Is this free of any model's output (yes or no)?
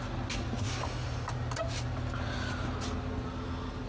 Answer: yes